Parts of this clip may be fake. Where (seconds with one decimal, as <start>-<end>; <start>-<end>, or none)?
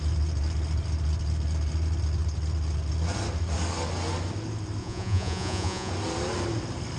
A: 4.8-5.9